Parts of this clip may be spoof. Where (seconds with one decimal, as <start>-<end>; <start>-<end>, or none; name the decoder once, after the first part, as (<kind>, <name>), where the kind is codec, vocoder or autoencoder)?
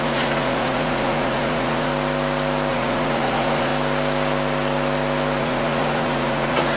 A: 0.0-1.9 (vocoder, Vocos); 2.7-3.7; 5.4-6.8